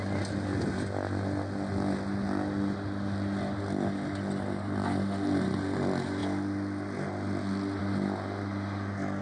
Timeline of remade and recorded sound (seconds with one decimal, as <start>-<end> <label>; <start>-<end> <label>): 0.0-9.2 recorded